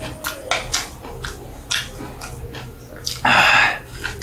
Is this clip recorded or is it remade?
recorded